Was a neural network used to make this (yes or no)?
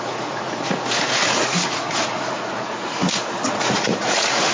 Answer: yes